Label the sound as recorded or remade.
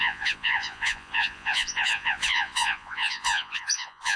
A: remade